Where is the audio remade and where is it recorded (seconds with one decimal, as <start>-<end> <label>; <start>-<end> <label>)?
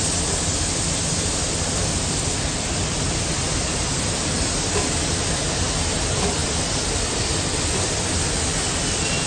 0.0-9.3 recorded